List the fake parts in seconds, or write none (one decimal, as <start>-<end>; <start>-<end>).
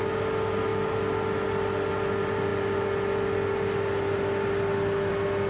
none